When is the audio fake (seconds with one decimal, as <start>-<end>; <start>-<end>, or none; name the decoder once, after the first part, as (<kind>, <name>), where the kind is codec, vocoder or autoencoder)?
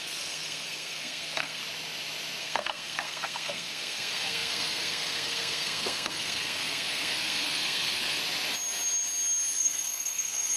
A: 0.0-1.6 (codec, SNAC); 2.4-8.2; 9.6-10.6